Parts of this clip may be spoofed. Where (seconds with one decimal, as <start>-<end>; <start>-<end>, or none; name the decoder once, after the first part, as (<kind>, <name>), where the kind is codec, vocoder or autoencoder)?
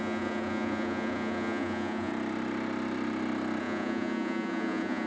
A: 0.0-2.1 (vocoder, Vocos); 3.6-5.1